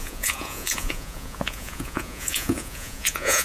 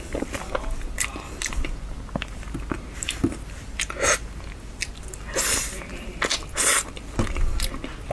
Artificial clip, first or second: first